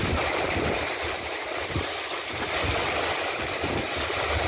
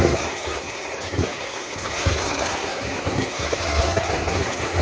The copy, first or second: second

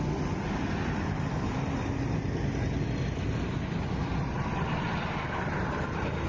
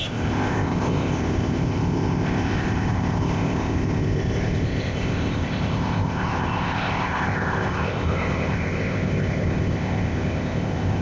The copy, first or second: second